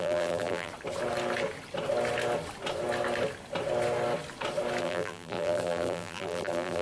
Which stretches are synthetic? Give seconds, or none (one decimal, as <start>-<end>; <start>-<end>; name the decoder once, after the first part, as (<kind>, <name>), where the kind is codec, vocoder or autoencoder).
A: 0.0-0.7 (vocoder, BigVGAN v2); 4.8-6.8